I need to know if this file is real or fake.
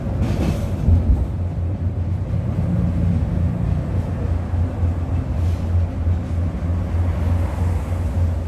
real